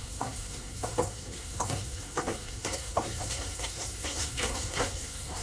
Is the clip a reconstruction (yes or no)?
yes